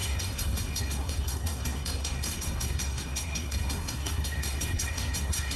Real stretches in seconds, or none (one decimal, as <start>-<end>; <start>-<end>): none